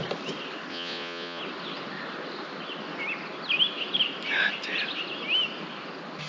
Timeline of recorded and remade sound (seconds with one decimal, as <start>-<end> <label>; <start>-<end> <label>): 0.0-0.7 recorded; 0.7-1.4 remade; 1.4-6.3 recorded